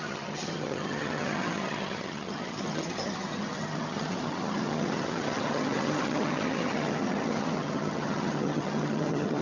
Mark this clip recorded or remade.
remade